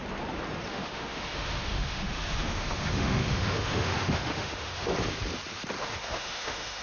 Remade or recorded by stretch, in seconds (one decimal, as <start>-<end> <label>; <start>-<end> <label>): 0.0-0.7 recorded; 0.7-4.9 remade; 4.9-5.8 recorded; 5.8-6.8 remade